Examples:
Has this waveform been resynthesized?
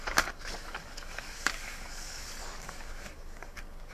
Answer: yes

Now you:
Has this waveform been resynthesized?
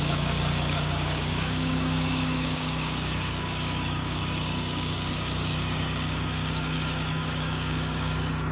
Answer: yes